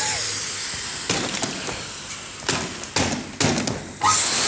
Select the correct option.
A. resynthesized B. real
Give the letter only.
B